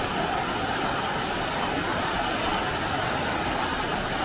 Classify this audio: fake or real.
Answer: real